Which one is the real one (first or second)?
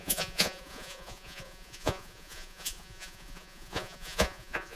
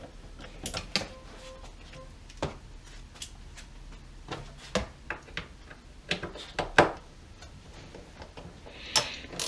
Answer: second